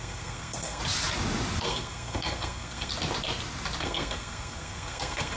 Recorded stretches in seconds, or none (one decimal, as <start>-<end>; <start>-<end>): 0.8-1.6; 2.9-3.8